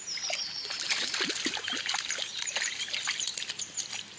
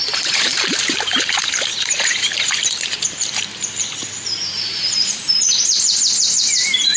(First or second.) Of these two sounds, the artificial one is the second